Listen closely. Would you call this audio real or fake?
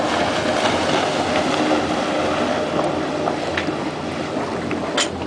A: real